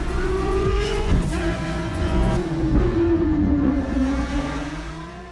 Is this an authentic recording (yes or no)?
no